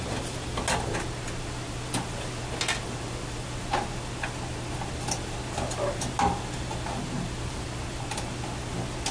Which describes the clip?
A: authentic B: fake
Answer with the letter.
A